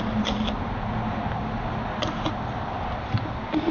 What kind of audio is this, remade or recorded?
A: recorded